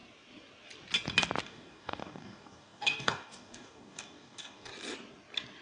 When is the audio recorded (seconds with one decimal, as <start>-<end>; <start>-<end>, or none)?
0.0-1.4; 4.7-5.6